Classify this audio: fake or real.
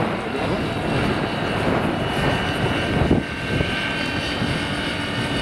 real